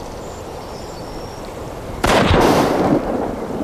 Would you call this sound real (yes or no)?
no